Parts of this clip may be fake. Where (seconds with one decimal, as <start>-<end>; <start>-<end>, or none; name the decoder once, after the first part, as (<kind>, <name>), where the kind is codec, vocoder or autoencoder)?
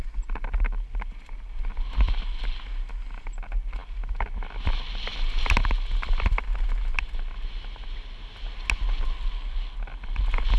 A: none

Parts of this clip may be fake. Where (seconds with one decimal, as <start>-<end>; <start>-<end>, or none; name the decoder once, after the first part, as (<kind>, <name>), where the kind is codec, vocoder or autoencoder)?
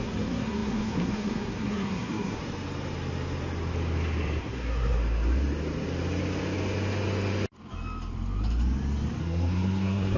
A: 0.0-2.4 (codec, SNAC); 4.4-5.0; 9.2-10.2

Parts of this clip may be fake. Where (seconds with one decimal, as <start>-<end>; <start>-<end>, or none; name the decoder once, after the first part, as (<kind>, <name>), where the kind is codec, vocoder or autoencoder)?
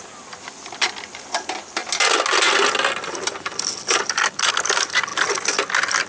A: none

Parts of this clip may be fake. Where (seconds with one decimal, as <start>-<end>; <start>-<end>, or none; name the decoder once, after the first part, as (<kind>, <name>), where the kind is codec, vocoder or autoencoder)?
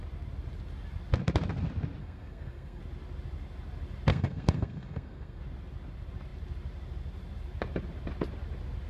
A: 2.0-2.8 (codec, SNAC); 4.1-5.4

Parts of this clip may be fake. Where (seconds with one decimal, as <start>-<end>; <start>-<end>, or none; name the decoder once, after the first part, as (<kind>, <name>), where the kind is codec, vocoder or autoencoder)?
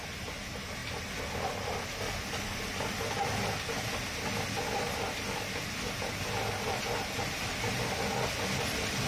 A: none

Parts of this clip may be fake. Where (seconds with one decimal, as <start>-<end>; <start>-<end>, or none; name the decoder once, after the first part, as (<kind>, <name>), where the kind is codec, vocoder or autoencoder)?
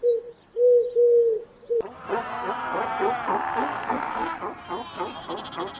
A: 3.7-4.4 (codec, SNAC)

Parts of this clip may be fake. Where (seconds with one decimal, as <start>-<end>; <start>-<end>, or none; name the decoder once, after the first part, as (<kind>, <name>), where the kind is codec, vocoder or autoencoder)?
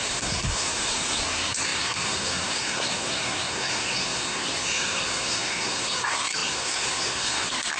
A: 0.0-7.8 (codec, SNAC)